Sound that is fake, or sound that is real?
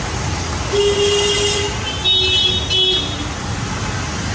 real